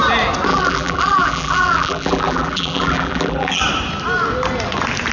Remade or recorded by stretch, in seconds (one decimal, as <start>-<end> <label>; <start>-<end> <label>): 0.0-0.5 recorded; 0.5-3.6 remade; 3.6-5.1 recorded